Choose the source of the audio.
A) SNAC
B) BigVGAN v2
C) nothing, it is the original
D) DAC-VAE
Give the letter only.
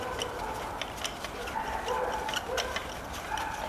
C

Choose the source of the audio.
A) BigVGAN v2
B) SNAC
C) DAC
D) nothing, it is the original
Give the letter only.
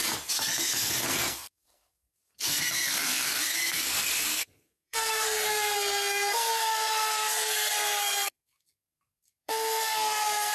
B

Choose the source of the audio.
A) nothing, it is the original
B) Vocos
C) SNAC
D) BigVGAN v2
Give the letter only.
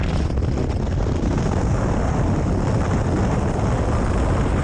A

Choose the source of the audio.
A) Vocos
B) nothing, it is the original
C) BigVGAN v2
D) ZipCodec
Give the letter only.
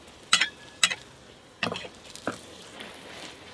B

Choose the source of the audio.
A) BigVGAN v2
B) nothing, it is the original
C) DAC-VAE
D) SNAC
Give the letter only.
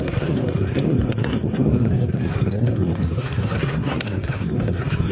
D